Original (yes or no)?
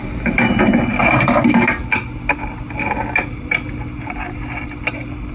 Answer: yes